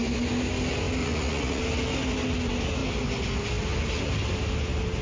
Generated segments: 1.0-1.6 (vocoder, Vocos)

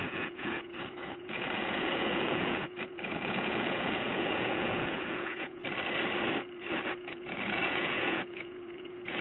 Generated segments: 0.0-5.6 (vocoder, Vocos); 6.9-9.2

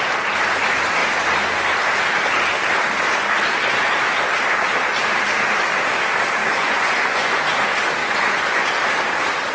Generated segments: 6.4-7.4 (vocoder, Vocos); 8.0-8.7

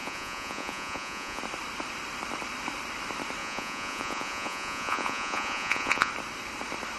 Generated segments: 0.0-1.4 (vocoder, Vocos); 3.4-6.1

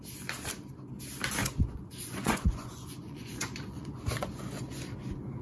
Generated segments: 1.4-4.6 (vocoder, Vocos)